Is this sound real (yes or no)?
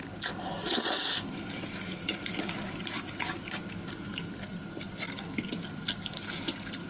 no